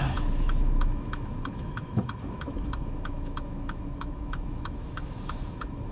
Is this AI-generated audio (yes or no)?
yes